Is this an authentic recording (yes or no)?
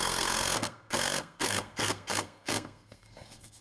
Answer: no